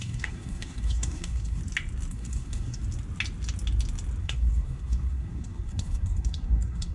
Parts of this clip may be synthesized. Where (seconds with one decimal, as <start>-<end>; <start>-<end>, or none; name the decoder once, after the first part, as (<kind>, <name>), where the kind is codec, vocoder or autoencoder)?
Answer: 0.0-1.6 (codec, SNAC); 2.1-2.8; 4.2-6.9

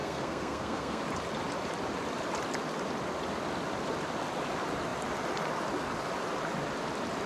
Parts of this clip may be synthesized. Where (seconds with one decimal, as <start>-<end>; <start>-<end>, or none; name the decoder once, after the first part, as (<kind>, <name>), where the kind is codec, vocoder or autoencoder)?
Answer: 0.0-1.0 (codec, SNAC)

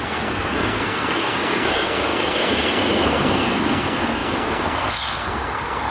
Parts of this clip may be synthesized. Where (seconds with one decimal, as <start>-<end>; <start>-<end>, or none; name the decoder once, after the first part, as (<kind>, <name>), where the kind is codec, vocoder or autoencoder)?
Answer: 0.0-5.9 (codec, SNAC)

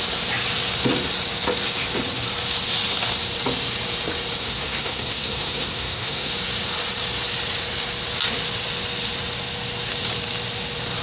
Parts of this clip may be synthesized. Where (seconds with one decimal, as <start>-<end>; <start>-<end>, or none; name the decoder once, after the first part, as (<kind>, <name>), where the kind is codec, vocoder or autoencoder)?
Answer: 4.4-6.3 (codec, SNAC)

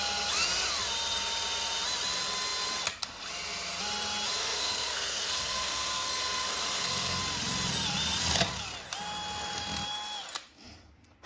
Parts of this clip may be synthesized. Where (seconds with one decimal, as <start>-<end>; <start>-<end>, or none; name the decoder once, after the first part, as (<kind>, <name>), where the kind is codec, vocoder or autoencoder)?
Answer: 4.4-7.2 (codec, SNAC)

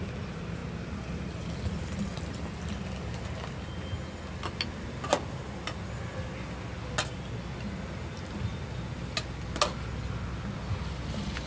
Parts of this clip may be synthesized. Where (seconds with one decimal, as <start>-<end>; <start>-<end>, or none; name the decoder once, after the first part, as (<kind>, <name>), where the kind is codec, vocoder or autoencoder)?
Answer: none

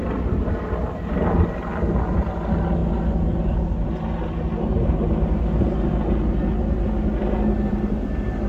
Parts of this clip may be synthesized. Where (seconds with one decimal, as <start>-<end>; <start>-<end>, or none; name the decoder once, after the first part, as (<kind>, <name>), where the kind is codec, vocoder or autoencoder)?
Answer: none

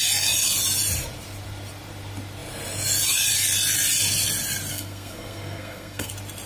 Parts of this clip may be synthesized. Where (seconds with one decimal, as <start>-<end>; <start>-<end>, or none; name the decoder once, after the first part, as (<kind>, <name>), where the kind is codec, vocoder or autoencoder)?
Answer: 4.7-6.1 (codec, SNAC)